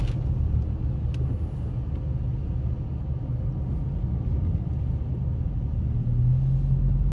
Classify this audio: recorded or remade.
recorded